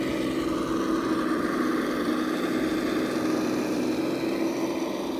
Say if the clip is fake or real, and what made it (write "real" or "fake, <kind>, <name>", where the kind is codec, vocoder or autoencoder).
real